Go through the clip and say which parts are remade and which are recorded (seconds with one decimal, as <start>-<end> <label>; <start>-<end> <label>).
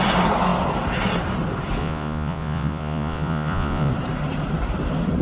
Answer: 0.0-1.8 recorded; 1.8-3.9 remade; 3.9-5.2 recorded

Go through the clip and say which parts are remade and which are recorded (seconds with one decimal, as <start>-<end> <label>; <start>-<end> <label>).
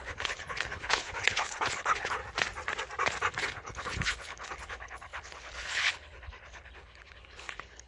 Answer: 0.0-2.2 remade; 2.2-3.4 recorded; 3.4-7.9 remade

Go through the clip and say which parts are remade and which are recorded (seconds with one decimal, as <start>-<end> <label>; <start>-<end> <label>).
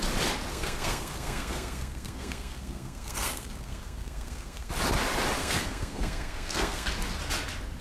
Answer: 0.0-0.5 recorded; 0.5-4.7 remade; 4.7-5.4 recorded; 5.4-6.9 remade; 6.9-7.8 recorded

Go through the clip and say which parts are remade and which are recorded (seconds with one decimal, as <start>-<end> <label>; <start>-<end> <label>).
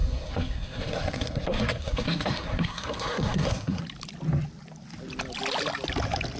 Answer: 0.0-3.8 remade; 3.8-6.4 recorded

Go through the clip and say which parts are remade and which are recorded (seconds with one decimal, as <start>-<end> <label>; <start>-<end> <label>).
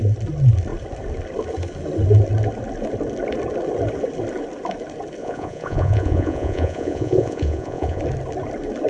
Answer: 0.0-5.2 recorded; 5.2-8.0 remade; 8.0-8.9 recorded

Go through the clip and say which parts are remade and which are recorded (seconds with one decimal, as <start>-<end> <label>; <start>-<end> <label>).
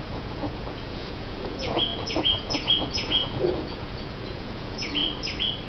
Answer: 0.0-5.0 remade; 5.0-5.7 recorded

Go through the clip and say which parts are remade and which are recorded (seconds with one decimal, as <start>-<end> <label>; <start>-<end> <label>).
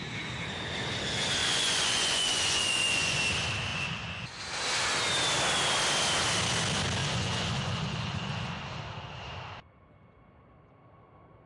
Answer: 0.0-1.4 recorded; 1.4-3.2 remade; 3.2-3.7 recorded; 3.7-4.4 remade; 4.4-7.0 recorded; 7.0-8.6 remade; 8.6-11.5 recorded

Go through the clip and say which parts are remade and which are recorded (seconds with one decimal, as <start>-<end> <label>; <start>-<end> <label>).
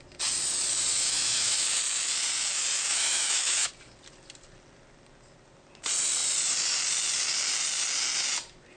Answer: 0.0-0.9 recorded; 0.9-1.8 remade; 1.8-2.9 recorded; 2.9-3.7 remade; 3.7-8.8 recorded